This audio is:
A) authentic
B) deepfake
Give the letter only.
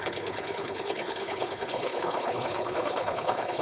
B